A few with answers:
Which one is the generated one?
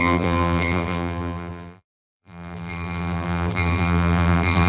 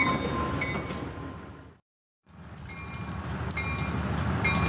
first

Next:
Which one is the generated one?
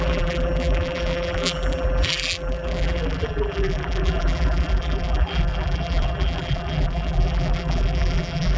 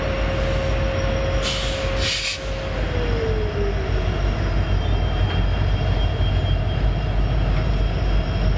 first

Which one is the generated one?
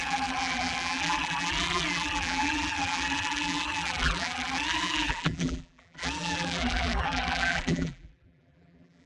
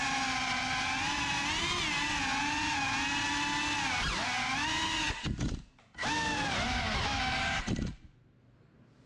first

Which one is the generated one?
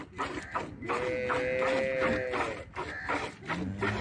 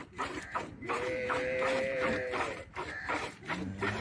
second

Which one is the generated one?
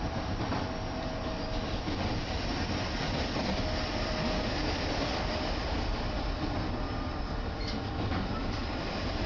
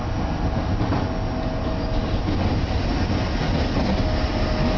first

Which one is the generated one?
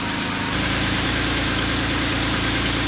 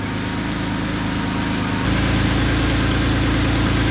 first